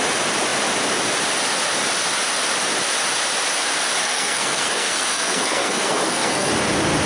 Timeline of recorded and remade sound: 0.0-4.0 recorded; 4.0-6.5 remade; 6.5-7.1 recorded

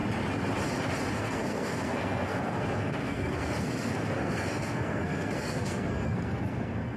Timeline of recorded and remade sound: 0.0-1.2 recorded; 1.2-7.0 remade